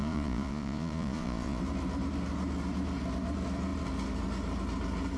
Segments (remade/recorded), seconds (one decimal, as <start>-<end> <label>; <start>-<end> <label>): 0.0-1.6 remade; 1.6-5.2 recorded